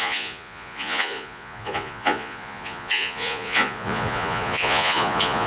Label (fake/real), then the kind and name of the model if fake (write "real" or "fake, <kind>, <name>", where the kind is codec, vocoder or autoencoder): fake, vocoder, Vocos